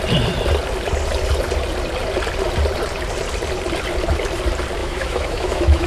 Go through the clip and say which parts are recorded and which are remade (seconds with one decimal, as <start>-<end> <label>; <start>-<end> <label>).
0.0-4.8 recorded; 4.8-5.9 remade